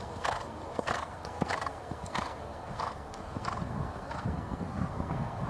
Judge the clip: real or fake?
fake